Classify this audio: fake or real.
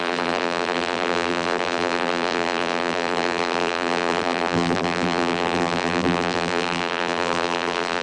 fake